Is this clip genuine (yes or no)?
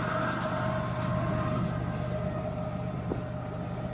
yes